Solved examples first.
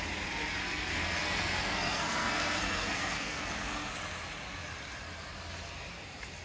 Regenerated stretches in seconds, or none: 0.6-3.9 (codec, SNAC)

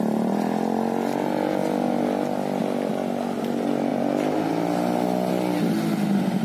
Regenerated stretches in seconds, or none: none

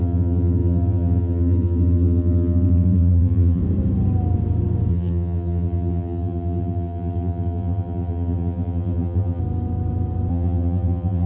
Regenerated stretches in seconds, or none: 0.0-3.6 (vocoder, BigVGAN v2); 4.9-9.4; 10.3-11.3